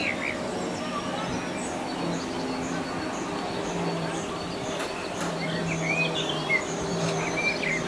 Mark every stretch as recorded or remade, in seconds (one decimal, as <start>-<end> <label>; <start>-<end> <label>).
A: 0.0-4.5 recorded; 4.5-5.6 remade; 5.6-6.4 recorded; 6.4-7.9 remade